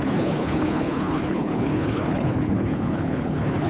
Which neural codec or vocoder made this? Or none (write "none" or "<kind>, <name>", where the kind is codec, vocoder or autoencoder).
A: codec, HILCodec